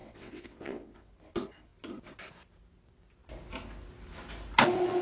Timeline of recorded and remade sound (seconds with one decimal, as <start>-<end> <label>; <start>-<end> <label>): 0.0-1.1 remade; 1.1-5.0 recorded